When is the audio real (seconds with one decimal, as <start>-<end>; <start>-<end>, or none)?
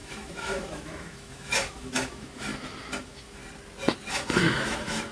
2.5-3.0; 3.4-4.1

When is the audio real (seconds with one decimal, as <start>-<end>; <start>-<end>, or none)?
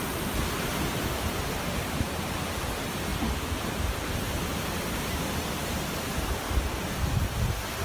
2.3-3.1; 6.6-7.8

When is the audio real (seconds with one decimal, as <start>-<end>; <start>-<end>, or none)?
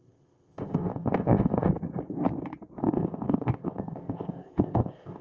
1.7-2.8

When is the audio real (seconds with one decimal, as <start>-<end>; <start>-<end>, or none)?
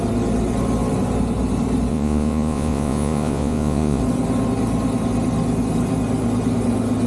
0.0-1.9; 4.0-7.1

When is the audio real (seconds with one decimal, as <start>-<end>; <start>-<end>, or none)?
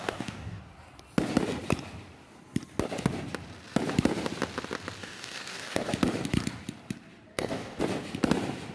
0.6-5.0; 5.9-7.3; 7.8-8.7